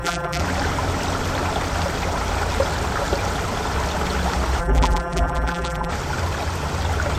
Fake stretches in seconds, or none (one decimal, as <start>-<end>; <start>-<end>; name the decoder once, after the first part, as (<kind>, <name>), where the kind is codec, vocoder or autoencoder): 0.0-0.4 (vocoder, BigVGAN v2); 4.6-5.9